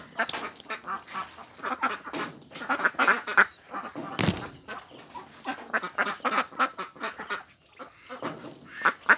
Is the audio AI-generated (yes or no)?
no